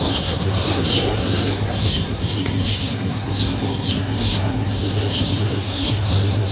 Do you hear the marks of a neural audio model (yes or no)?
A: yes